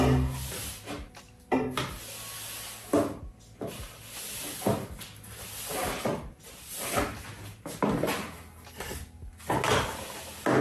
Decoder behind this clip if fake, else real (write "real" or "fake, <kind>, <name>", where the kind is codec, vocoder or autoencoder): real